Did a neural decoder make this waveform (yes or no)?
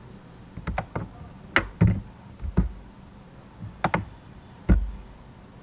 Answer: no